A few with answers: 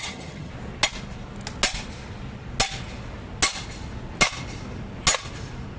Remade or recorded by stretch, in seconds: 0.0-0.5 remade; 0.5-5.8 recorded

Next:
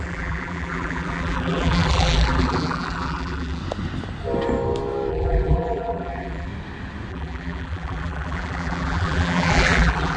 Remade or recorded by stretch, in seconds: 0.0-3.6 remade; 3.6-5.1 recorded; 5.1-6.5 remade; 6.5-7.1 recorded; 7.1-10.2 remade